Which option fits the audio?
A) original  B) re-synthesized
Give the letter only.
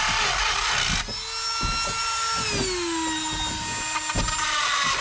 A